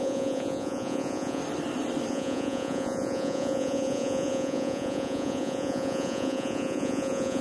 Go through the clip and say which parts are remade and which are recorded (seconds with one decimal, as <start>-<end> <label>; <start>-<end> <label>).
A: 0.0-1.4 remade; 1.4-2.1 recorded; 2.1-7.4 remade